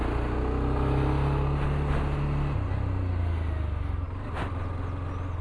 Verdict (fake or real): real